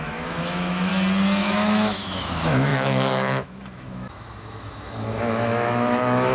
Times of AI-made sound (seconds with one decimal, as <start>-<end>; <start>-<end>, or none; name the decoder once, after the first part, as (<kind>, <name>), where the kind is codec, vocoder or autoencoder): 0.0-0.9 (autoencoder, DAC-VAE); 1.4-6.3